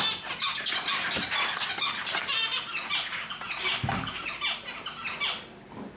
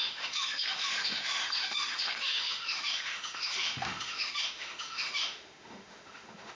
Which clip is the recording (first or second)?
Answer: first